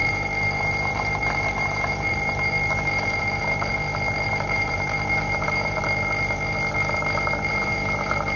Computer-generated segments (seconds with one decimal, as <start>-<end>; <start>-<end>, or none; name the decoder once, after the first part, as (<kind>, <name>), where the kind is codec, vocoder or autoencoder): 0.0-3.7 (vocoder, BigVGAN v2); 4.3-5.8; 7.5-8.4